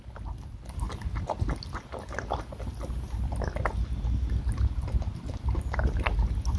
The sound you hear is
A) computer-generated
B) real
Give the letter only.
B